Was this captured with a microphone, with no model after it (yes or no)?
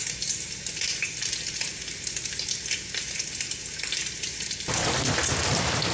yes